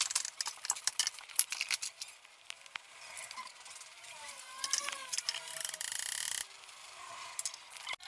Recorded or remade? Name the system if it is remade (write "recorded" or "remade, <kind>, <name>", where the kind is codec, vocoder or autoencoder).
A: recorded